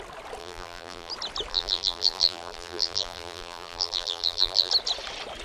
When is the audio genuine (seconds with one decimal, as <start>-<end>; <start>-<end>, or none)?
0.0-0.4; 1.1-1.5; 4.7-5.4